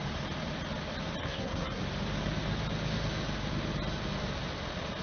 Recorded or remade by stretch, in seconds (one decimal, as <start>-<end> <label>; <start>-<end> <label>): 0.0-1.2 recorded; 1.2-1.8 remade; 1.8-5.0 recorded